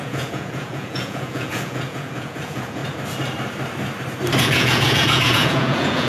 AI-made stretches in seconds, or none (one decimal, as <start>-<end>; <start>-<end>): 0.0-2.8; 4.4-6.1